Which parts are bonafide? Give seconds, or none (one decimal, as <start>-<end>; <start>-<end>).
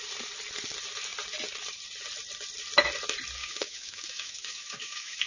0.0-3.4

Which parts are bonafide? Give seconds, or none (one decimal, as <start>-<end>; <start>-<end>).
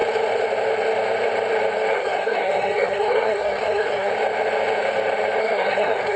0.0-1.9; 4.1-5.4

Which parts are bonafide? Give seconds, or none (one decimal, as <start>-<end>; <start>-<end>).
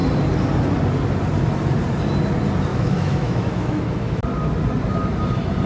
0.0-2.7; 4.2-5.7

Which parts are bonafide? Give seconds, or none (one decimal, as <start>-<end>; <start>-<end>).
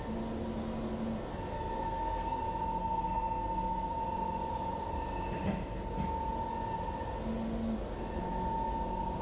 0.0-1.5; 2.4-2.8; 4.0-9.2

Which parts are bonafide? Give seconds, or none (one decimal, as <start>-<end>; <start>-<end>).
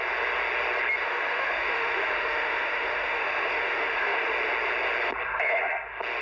0.0-1.0; 4.3-6.2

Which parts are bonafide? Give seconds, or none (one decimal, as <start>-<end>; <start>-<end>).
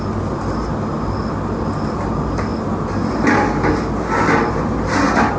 0.0-5.4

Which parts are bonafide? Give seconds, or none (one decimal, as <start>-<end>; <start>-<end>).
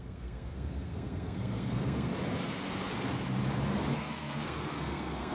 2.1-3.9